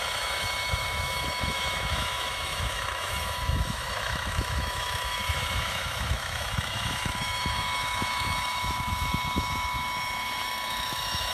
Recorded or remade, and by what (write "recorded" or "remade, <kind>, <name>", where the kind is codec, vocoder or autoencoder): remade, autoencoder, DAC-VAE